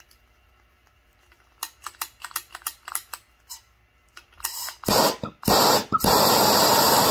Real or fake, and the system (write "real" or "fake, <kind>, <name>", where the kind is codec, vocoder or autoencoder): real